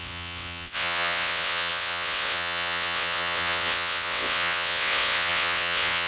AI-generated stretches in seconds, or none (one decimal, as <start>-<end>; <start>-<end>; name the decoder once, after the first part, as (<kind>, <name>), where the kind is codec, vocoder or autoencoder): 0.0-6.1 (vocoder, WaveNeXt)

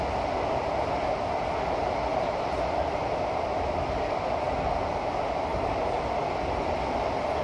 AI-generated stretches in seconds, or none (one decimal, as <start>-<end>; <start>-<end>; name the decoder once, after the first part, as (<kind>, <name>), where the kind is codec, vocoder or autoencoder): 2.1-2.7 (vocoder, BigVGAN v2); 5.5-6.0

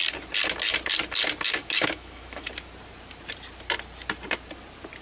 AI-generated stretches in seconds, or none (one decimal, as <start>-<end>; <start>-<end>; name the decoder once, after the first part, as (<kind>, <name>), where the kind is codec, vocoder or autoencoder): 1.6-2.4 (autoencoder, DAC-VAE)